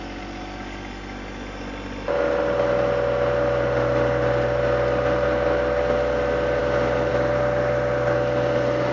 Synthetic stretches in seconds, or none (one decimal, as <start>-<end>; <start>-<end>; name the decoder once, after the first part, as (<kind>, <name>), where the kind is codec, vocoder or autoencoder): none